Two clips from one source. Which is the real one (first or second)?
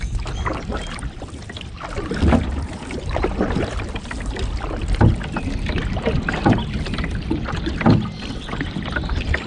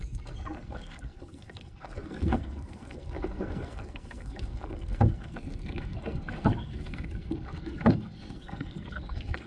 first